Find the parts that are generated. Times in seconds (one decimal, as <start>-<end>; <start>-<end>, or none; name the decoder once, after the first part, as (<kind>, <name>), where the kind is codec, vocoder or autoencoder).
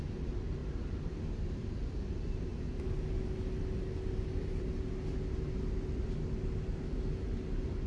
none